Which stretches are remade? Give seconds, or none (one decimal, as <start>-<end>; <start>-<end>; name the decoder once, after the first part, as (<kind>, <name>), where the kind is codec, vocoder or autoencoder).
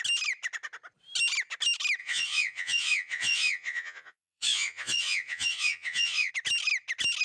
2.0-6.3 (vocoder, Vocos)